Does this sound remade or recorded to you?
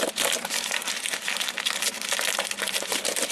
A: recorded